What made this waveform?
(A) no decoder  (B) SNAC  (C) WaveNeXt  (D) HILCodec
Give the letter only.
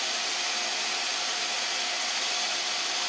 A